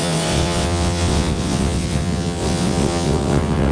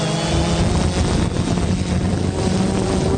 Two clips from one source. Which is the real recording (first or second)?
second